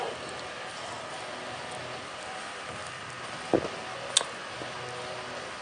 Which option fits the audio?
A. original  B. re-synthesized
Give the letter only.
A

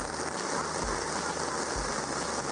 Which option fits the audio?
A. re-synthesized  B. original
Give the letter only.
B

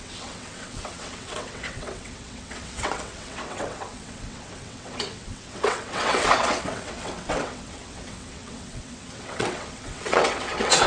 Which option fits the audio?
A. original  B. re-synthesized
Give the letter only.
B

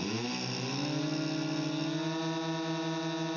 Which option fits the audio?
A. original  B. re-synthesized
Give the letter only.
A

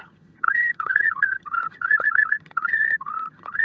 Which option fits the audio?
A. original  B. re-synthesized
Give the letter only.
B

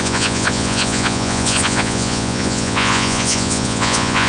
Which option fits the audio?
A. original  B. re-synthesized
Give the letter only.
B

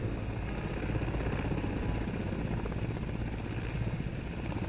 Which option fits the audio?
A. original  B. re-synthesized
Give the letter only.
A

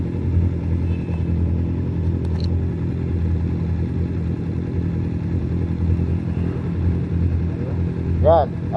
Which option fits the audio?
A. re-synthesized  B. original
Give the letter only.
B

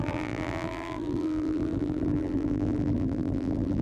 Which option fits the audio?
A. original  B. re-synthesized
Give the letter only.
B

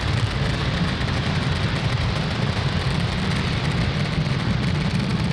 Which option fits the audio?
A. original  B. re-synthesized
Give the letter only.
B